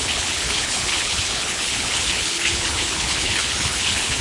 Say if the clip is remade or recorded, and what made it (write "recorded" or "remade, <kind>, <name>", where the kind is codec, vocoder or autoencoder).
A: remade, codec, HILCodec